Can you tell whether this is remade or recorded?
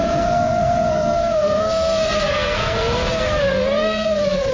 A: remade